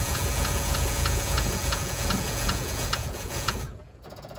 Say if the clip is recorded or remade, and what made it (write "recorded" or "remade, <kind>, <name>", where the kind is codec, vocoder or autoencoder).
remade, vocoder, Vocos